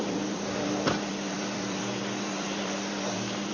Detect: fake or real fake